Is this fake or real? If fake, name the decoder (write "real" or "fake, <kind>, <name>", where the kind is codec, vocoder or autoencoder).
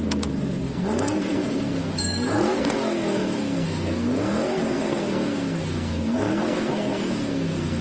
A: fake, codec, SNAC